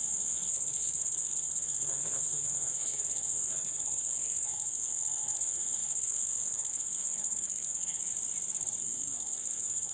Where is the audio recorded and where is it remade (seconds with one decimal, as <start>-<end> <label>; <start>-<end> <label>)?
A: 0.0-8.1 remade; 8.1-8.8 recorded; 8.8-9.9 remade